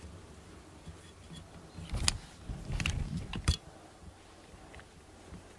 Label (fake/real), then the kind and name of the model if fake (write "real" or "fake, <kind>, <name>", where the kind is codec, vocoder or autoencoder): real